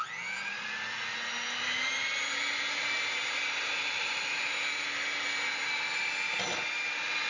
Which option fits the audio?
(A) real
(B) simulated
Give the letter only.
A